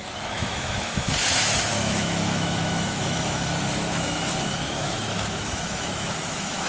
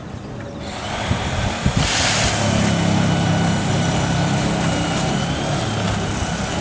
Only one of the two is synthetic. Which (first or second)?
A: first